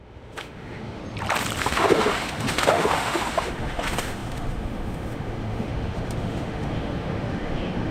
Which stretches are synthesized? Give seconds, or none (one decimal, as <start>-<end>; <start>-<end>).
0.0-1.0; 1.6-7.9